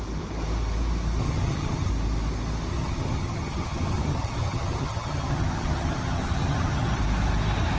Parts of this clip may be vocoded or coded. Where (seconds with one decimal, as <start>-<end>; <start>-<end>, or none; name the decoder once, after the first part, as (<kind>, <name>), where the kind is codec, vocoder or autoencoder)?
1.2-1.9 (vocoder, HiFi-GAN); 2.7-7.0